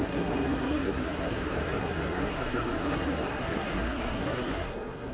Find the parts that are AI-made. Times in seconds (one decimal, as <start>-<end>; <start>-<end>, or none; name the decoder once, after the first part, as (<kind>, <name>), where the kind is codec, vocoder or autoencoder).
0.0-5.1 (codec, SNAC)